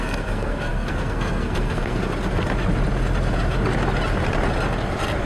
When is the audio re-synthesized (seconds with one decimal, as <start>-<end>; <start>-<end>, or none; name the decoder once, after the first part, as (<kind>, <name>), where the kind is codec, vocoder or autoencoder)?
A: 0.0-2.0 (codec, SNAC)